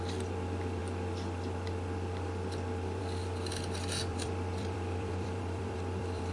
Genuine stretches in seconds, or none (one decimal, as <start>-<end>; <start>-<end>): 0.0-4.1